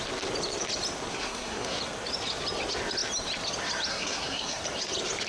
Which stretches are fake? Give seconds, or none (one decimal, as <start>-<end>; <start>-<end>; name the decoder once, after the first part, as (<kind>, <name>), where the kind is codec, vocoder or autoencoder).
1.1-1.8 (codec, SNAC); 3.9-4.6